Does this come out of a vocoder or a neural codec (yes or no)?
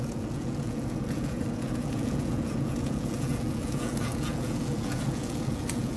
yes